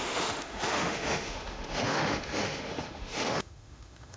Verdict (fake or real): fake